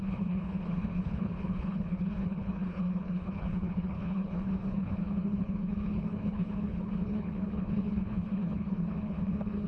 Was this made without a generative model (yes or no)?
no